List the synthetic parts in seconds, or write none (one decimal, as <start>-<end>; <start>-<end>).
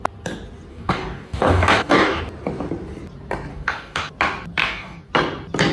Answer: 0.7-2.2; 3.5-4.1; 4.6-5.1